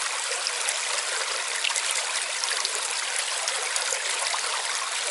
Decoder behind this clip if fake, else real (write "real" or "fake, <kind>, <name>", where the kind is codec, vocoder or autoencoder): real